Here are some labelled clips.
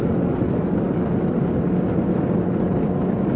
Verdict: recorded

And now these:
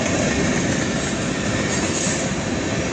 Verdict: recorded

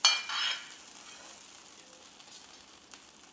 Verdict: recorded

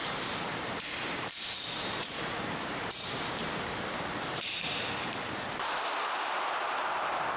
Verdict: remade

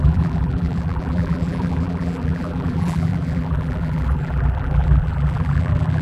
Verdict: remade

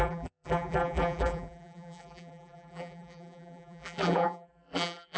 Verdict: remade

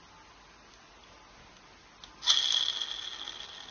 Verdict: recorded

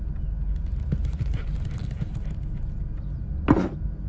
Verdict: recorded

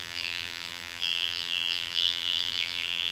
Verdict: remade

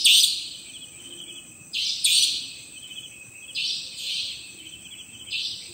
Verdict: recorded